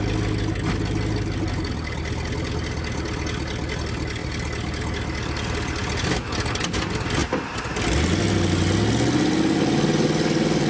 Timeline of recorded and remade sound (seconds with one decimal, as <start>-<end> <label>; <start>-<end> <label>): 0.0-10.7 recorded